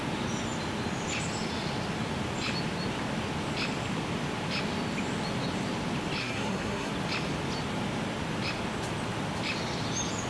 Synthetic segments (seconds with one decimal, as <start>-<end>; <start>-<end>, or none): 6.2-6.9